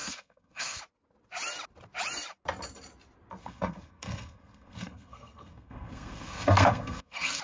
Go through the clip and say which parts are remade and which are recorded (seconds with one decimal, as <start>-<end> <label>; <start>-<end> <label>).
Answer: 0.0-0.8 remade; 0.8-3.4 recorded; 3.4-7.4 remade